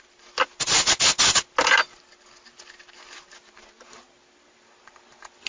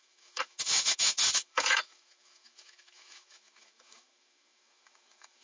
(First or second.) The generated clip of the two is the second